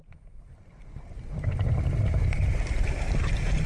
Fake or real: real